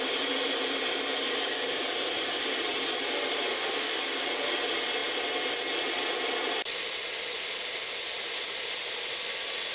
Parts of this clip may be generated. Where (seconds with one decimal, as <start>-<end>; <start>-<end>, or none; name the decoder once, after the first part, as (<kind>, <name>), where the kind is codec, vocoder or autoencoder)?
3.5-4.0 (autoencoder, DAC-VAE)